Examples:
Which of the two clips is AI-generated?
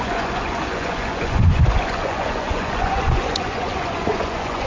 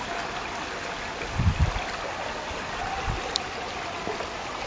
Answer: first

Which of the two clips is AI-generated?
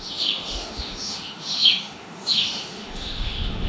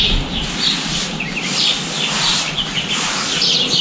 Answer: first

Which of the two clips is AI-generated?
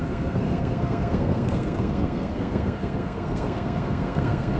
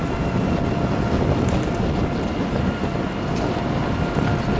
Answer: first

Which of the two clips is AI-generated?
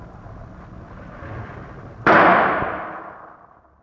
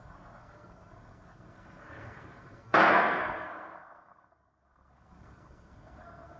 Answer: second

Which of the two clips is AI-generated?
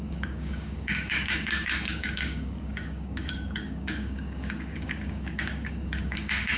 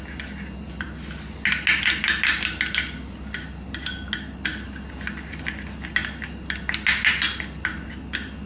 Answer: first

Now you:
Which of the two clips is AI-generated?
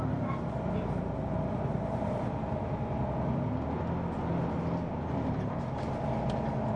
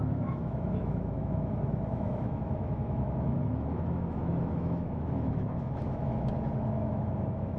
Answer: second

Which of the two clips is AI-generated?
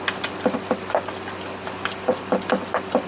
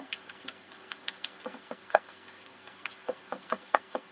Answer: second